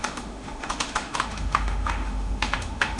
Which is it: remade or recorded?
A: remade